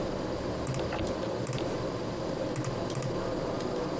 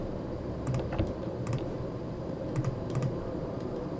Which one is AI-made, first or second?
second